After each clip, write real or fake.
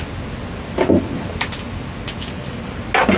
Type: real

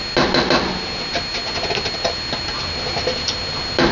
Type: real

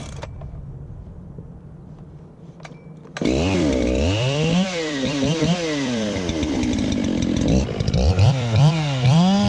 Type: fake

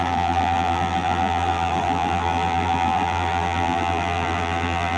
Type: fake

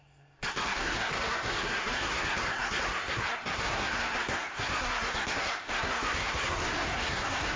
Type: fake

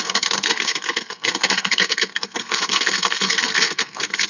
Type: fake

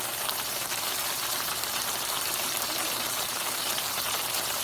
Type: fake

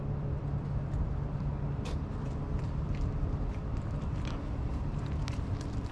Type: fake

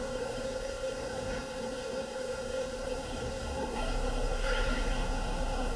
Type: fake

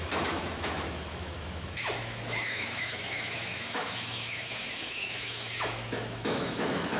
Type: fake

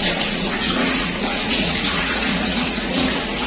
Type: fake